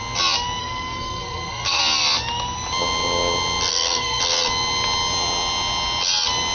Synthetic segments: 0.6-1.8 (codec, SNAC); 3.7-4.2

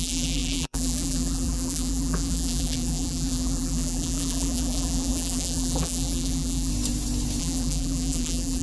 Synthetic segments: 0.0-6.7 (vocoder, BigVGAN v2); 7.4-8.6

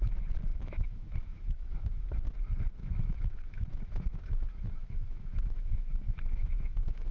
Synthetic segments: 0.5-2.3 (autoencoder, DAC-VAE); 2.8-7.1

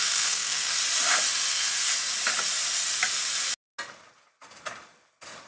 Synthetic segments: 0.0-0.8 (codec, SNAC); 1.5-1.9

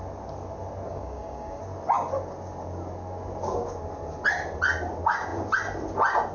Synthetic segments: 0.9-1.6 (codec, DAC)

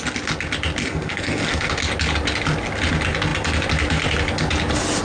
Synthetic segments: 0.8-1.7 (codec, SNAC)

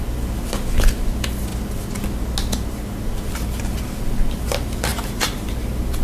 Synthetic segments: 4.9-5.5 (vocoder, BigVGAN v2)

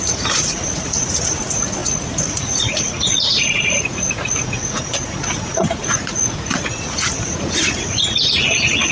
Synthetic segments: 0.0-8.9 (vocoder, Vocos)